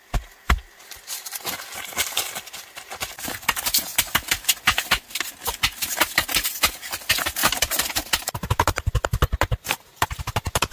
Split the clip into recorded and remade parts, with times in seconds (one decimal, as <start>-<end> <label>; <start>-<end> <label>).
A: 0.0-10.7 recorded